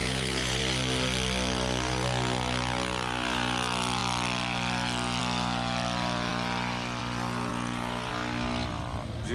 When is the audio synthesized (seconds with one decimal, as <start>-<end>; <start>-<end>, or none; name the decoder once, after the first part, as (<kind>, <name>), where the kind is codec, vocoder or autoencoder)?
0.0-0.6 (vocoder, Vocos); 7.5-8.1